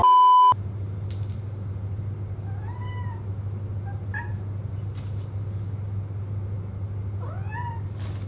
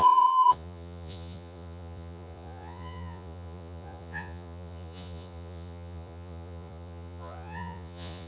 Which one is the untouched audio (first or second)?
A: first